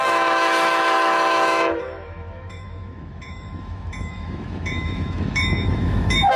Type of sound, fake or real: fake